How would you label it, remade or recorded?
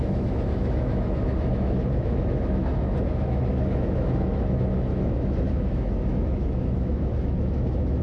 remade